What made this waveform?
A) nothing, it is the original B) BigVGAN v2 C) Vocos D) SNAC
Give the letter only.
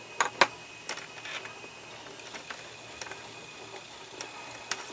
A